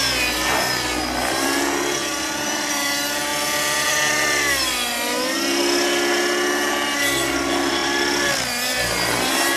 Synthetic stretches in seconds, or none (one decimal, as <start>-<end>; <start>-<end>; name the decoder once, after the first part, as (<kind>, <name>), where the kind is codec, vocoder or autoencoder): 2.0-2.7 (vocoder, BigVGAN v2); 3.3-3.9